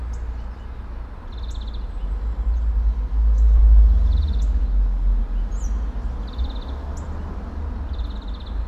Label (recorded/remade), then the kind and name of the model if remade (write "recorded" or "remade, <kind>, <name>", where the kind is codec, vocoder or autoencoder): recorded